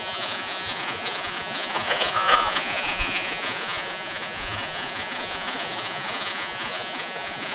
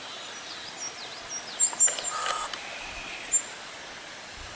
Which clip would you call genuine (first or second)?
second